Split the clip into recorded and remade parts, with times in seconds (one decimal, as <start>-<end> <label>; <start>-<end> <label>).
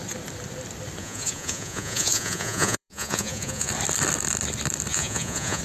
0.0-1.0 recorded; 1.0-3.7 remade; 3.7-4.9 recorded; 4.9-5.6 remade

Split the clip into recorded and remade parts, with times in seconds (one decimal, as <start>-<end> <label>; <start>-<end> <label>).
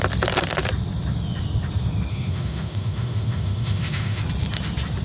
0.0-2.1 recorded; 2.1-4.2 remade; 4.2-5.0 recorded